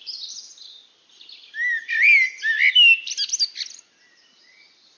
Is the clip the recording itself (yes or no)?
yes